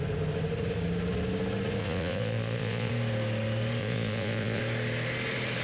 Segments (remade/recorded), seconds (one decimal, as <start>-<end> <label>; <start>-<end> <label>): 0.0-1.8 recorded; 1.8-2.9 remade; 2.9-3.8 recorded; 3.8-4.6 remade; 4.6-5.6 recorded